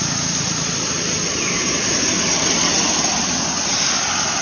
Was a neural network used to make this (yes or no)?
yes